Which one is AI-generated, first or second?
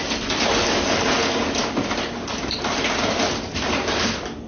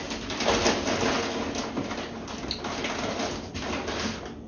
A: first